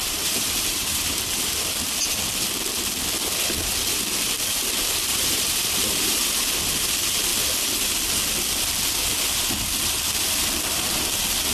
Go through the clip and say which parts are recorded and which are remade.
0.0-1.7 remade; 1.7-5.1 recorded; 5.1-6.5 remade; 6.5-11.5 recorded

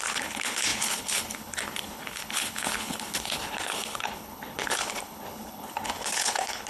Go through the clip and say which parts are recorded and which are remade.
0.0-6.7 remade

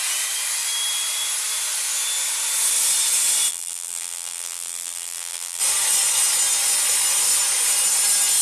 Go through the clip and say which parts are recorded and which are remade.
0.0-3.5 recorded; 3.5-5.6 remade; 5.6-8.4 recorded

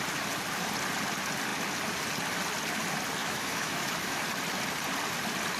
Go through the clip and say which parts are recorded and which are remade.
0.0-3.2 recorded; 3.2-4.2 remade; 4.2-5.6 recorded